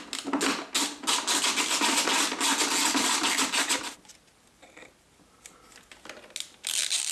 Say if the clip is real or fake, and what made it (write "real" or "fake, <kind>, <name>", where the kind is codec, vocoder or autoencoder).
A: real